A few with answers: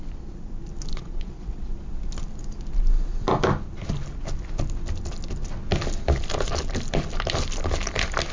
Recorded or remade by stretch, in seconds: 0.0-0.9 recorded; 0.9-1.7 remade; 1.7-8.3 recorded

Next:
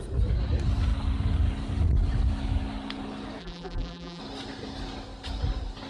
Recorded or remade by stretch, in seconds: 0.0-3.4 recorded; 3.4-4.2 remade; 4.2-5.9 recorded

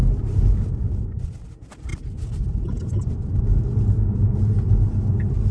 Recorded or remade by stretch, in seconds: 0.0-5.5 recorded